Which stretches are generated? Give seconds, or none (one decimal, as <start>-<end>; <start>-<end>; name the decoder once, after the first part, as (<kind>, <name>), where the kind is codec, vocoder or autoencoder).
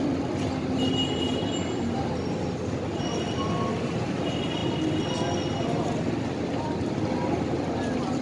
none